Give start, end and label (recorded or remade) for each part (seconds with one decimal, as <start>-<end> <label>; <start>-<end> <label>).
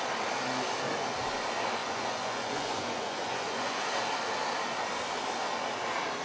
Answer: 0.0-1.8 recorded; 1.8-3.8 remade; 3.8-6.2 recorded